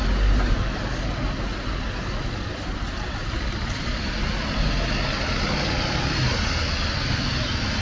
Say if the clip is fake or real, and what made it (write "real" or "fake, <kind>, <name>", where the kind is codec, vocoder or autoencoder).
real